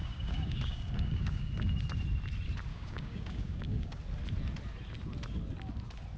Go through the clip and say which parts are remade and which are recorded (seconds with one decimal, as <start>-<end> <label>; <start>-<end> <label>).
0.0-1.5 remade; 1.5-2.7 recorded; 2.7-4.0 remade; 4.0-6.2 recorded